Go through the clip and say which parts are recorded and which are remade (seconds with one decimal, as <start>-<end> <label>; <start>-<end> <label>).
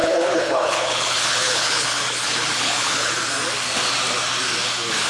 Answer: 0.0-3.1 remade; 3.1-5.1 recorded